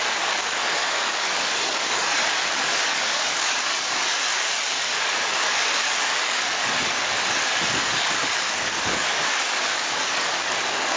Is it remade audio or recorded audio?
remade